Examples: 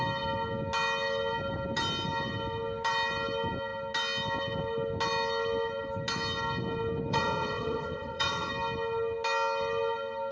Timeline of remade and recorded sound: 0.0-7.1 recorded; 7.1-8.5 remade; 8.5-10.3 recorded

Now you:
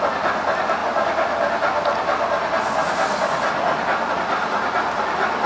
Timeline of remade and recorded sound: 0.0-5.5 recorded

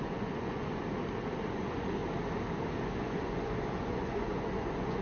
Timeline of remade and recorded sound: 0.0-0.8 remade; 0.8-1.5 recorded; 1.5-2.0 remade; 2.0-2.8 recorded; 2.8-5.0 remade

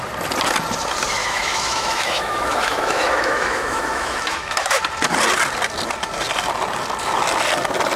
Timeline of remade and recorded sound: 0.0-1.2 recorded; 1.2-4.8 remade; 4.8-8.0 recorded